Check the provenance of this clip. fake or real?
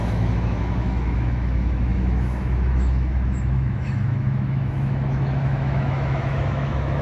fake